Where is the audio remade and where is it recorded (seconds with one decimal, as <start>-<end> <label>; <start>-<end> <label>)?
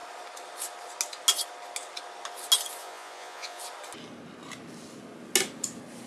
0.0-2.8 recorded; 2.8-3.6 remade; 3.6-6.1 recorded